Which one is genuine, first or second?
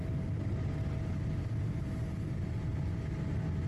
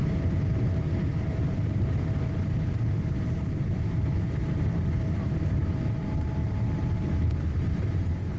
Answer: first